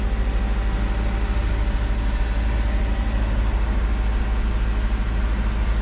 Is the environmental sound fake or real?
real